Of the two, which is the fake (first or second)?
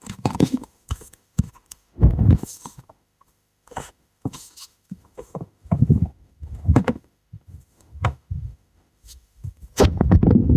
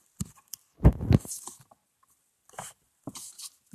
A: first